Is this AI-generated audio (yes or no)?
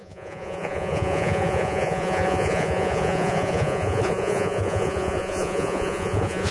yes